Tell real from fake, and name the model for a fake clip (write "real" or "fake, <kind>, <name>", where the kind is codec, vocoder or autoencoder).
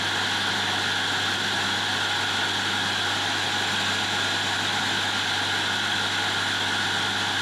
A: real